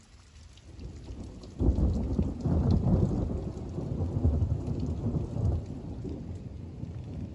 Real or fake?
real